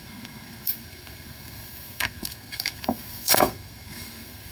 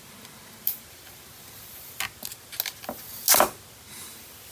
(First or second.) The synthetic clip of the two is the first